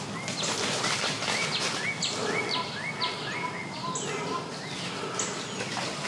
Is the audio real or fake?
real